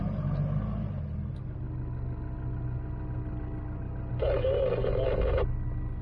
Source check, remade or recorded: recorded